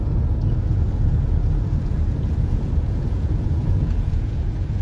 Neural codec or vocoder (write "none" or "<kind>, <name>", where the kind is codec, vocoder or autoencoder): vocoder, Vocos